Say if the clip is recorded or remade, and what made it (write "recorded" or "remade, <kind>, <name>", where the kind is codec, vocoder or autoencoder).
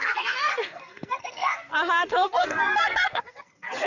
remade, codec, SNAC